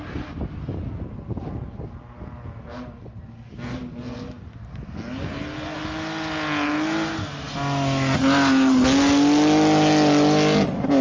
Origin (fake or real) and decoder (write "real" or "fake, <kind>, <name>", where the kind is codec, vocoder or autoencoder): real